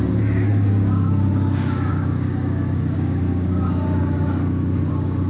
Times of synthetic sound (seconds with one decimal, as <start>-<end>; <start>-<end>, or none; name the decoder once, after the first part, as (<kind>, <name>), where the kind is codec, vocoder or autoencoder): 0.5-1.3 (codec, DAC); 1.9-5.3